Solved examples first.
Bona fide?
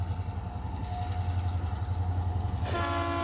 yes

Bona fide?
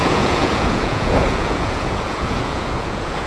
no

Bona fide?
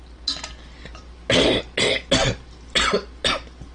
yes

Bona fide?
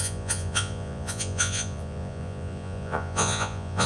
no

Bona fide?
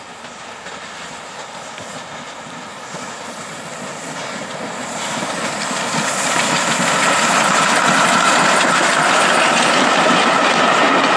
yes